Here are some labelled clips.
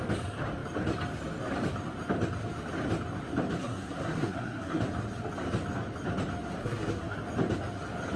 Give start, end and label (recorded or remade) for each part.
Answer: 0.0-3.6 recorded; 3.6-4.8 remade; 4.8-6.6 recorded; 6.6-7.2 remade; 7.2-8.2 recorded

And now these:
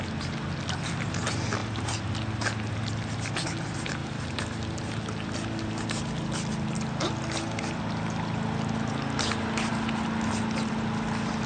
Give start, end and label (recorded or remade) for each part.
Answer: 0.0-11.5 recorded

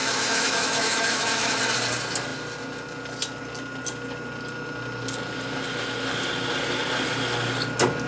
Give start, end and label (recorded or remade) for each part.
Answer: 0.0-1.6 remade; 1.6-8.1 recorded

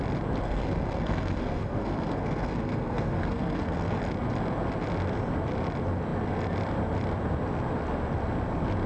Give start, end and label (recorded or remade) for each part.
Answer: 0.0-0.4 recorded; 0.4-4.0 remade; 4.0-8.9 recorded